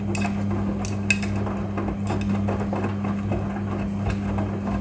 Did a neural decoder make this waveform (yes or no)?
no